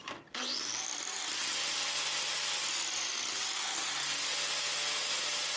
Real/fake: real